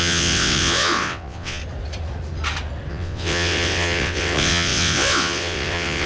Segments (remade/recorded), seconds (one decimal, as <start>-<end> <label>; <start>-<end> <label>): 0.0-1.6 remade; 1.6-2.9 recorded; 2.9-6.1 remade